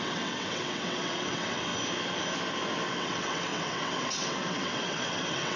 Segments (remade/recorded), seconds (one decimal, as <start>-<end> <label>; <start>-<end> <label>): 0.0-1.7 remade; 1.7-2.9 recorded; 2.9-5.6 remade